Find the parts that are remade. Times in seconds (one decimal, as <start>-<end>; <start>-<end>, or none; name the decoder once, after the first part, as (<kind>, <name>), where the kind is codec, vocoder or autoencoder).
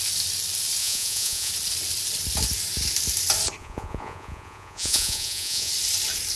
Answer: 0.8-1.5 (vocoder, Vocos); 3.6-5.7